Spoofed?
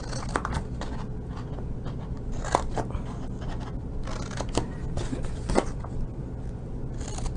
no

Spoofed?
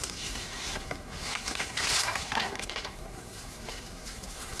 yes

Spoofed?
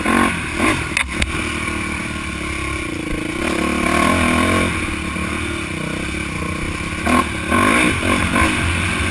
no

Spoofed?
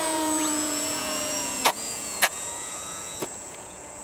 yes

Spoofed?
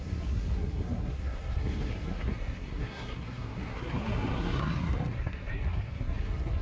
yes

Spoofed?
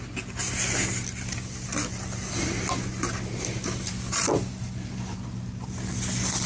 no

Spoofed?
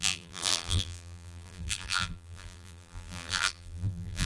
yes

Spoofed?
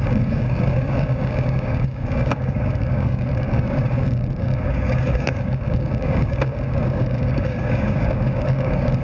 yes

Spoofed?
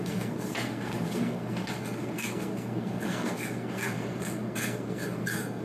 yes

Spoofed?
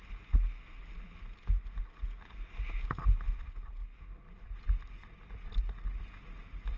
no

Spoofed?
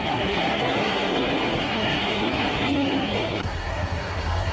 yes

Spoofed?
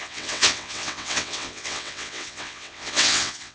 yes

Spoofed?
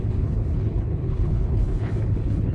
yes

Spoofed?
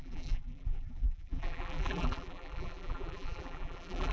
yes